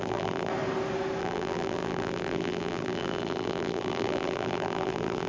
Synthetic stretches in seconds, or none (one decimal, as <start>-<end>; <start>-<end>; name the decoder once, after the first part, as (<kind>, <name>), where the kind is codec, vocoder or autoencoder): 0.0-0.5 (vocoder, BigVGAN v2); 1.2-5.3